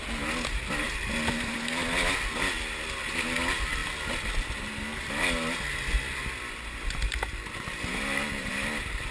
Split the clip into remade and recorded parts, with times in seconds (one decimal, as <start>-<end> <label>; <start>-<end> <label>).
0.0-7.9 recorded; 7.9-8.5 remade; 8.5-9.1 recorded